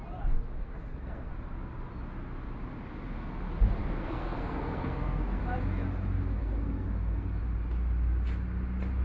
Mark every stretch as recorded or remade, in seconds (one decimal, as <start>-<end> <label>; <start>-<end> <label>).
0.0-0.6 recorded; 0.6-1.3 remade; 1.3-3.8 recorded; 3.8-5.4 remade; 5.4-6.4 recorded; 6.4-7.4 remade; 7.4-9.0 recorded